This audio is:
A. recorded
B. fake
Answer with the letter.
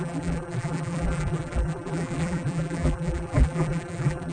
B